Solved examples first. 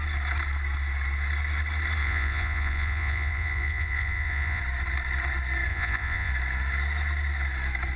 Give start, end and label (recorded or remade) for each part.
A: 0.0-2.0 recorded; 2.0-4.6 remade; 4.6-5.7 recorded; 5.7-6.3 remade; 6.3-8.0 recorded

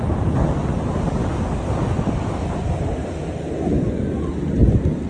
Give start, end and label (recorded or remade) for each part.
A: 0.0-5.1 recorded

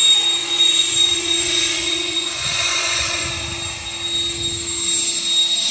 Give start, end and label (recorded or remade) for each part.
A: 0.0-0.4 recorded; 0.4-3.3 remade; 3.3-5.7 recorded